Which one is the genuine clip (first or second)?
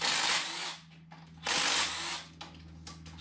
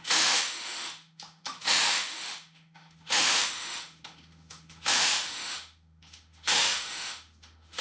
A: first